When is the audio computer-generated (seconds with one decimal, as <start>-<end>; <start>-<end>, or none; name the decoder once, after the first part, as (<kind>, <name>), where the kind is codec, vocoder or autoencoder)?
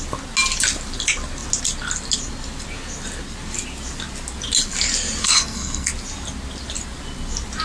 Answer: 5.2-5.9 (codec, SNAC)